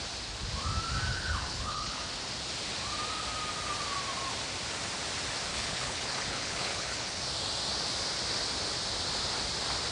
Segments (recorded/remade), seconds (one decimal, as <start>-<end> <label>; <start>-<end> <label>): 0.0-1.1 recorded; 1.1-2.0 remade; 2.0-5.5 recorded; 5.5-7.2 remade; 7.2-9.9 recorded